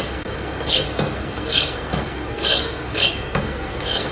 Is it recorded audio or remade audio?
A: remade